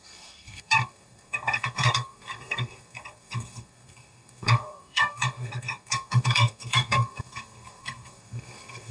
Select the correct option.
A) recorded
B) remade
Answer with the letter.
B